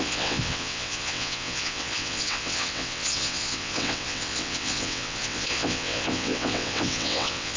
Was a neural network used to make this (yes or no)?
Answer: yes